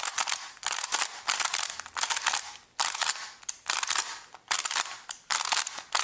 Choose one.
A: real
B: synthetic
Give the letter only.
B